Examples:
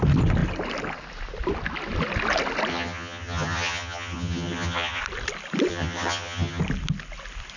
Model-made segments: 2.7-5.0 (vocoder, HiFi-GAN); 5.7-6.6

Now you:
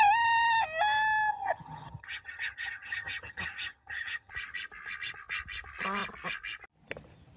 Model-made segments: 1.3-4.3 (vocoder, HiFi-GAN)

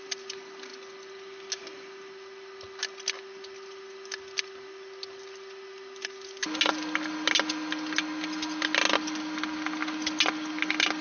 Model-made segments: none

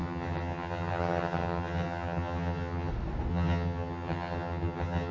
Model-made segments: 0.0-2.9 (vocoder, HiFi-GAN); 3.3-5.1

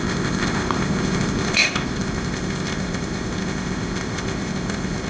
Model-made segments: 0.0-5.1 (codec, ZipCodec)